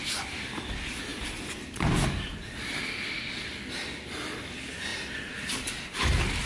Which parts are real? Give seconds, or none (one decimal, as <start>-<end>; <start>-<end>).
0.0-1.1; 3.1-4.9